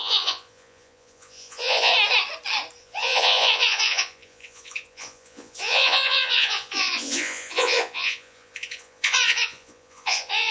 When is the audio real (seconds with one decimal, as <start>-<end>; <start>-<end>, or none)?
1.9-2.8